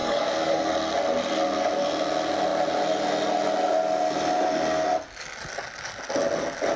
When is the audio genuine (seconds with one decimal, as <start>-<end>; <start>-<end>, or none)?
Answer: 0.7-6.8